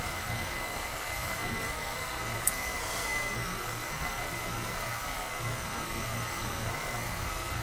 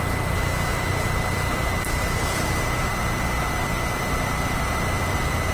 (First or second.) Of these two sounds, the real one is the second